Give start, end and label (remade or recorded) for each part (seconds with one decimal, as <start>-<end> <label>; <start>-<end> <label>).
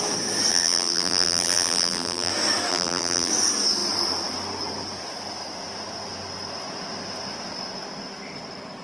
0.0-0.5 recorded; 0.5-2.3 remade; 2.3-2.7 recorded; 2.7-3.3 remade; 3.3-8.8 recorded